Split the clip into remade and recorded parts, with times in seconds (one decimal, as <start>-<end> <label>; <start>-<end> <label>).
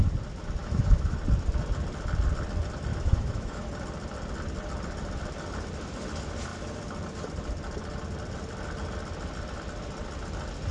0.0-0.6 recorded; 0.6-1.2 remade; 1.2-2.9 recorded; 2.9-3.7 remade; 3.7-10.7 recorded